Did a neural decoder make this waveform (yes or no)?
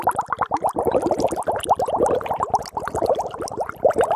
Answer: no